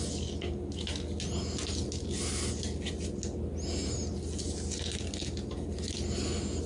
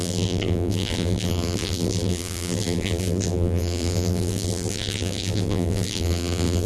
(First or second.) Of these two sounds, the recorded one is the first